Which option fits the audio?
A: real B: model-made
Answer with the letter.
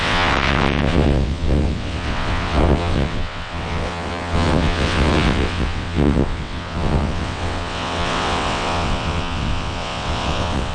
B